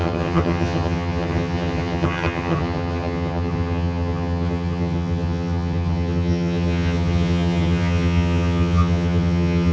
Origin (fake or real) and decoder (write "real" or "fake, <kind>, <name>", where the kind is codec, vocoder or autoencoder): fake, vocoder, HiFi-GAN